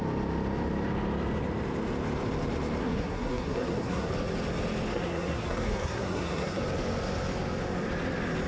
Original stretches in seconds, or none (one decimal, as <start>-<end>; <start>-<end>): 0.0-2.8; 4.1-4.9; 6.6-8.5